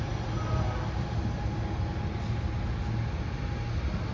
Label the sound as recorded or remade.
recorded